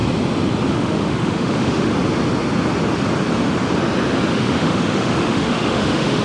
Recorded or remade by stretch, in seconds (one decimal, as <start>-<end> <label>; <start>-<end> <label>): 0.0-0.7 recorded; 0.7-1.9 remade; 1.9-4.3 recorded; 4.3-6.2 remade